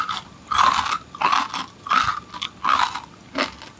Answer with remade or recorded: recorded